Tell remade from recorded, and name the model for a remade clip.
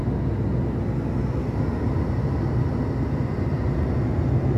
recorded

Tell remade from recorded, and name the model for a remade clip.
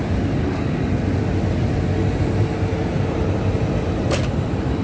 recorded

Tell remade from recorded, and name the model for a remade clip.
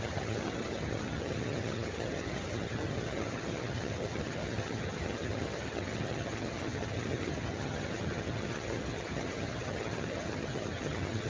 remade, vocoder, HiFi-GAN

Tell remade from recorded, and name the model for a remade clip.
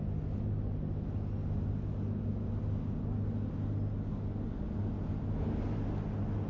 recorded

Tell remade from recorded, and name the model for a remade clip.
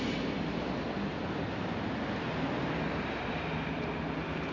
recorded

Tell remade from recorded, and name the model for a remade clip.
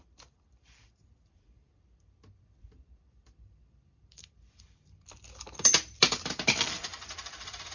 remade, vocoder, BigVGAN v2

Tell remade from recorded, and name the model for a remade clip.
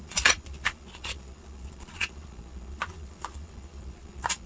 remade, vocoder, Vocos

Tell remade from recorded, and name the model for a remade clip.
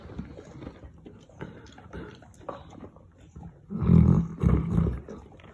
recorded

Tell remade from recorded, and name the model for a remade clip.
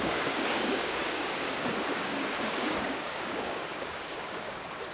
remade, codec, DAC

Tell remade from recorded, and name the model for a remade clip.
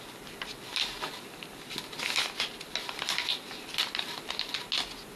recorded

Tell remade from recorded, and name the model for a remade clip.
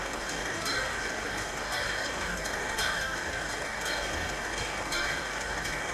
remade, codec, DAC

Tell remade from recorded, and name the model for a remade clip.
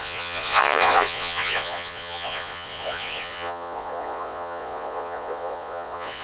remade, vocoder, Vocos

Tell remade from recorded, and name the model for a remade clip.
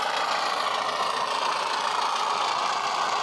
recorded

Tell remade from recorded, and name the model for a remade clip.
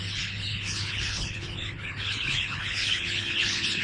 remade, codec, HILCodec